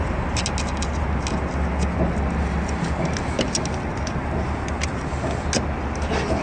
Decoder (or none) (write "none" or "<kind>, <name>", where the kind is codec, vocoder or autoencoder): none